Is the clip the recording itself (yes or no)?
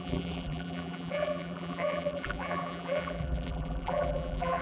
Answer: no